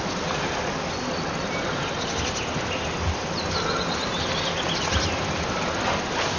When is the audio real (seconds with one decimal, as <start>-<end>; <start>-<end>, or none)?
0.0-6.4